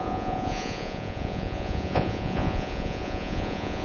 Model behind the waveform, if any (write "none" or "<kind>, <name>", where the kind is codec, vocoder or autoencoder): vocoder, Vocos